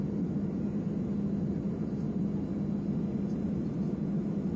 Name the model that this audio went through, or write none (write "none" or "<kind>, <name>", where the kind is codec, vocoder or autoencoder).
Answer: none